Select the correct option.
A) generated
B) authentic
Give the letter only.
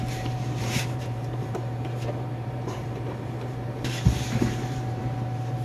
A